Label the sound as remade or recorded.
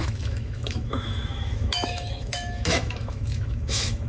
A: remade